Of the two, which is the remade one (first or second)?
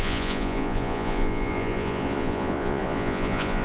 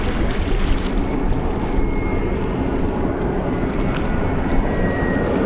first